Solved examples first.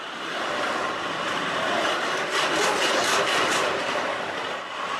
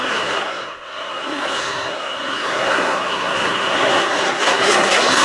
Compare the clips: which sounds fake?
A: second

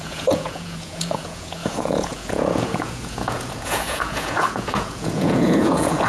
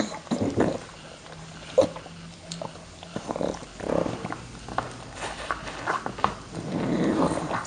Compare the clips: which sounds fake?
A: first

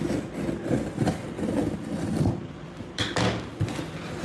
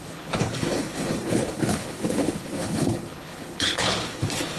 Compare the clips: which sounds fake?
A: second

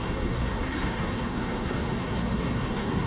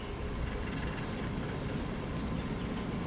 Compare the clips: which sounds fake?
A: first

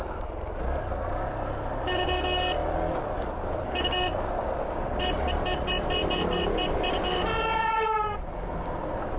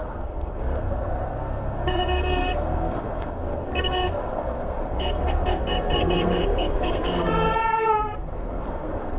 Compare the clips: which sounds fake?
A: second